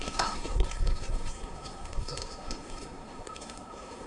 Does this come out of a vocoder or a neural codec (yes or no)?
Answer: yes